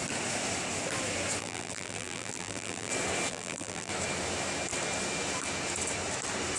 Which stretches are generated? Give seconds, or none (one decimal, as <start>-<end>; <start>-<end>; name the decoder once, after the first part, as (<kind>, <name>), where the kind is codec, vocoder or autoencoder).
1.4-2.9 (vocoder, BigVGAN v2); 3.3-3.9